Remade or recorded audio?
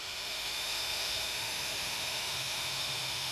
remade